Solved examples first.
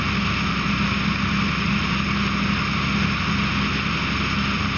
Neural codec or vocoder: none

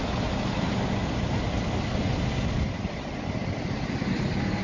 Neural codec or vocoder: none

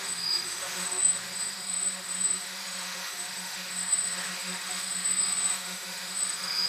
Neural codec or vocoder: autoencoder, DAC-VAE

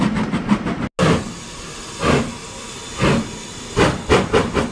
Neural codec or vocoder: none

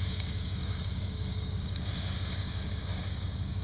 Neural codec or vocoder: codec, DAC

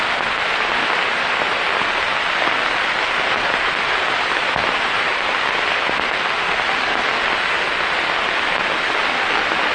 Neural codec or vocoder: none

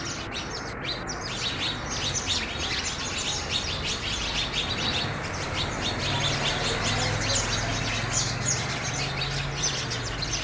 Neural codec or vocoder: none